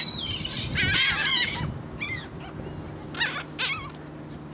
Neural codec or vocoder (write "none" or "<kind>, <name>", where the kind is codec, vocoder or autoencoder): none